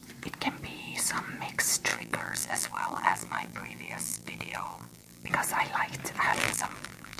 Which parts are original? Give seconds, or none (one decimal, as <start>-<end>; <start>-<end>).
0.0-1.9; 5.3-6.3